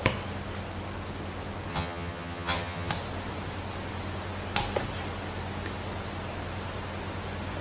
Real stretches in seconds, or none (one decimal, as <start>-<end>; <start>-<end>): 0.0-1.7; 2.9-7.6